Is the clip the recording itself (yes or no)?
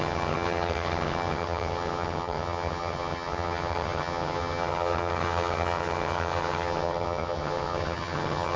no